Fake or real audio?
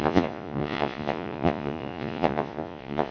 fake